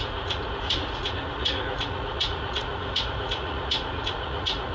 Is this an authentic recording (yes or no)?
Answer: no